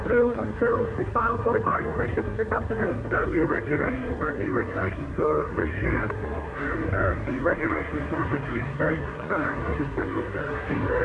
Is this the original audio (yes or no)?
no